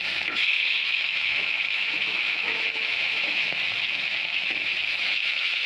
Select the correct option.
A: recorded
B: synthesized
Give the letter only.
B